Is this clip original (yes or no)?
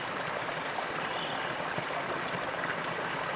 yes